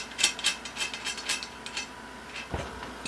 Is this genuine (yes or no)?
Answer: yes